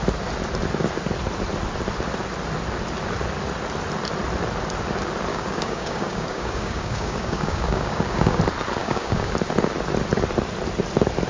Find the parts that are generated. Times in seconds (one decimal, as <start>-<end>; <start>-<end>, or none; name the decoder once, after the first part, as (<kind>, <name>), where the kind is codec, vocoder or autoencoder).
5.3-8.4 (codec, DAC); 8.8-9.3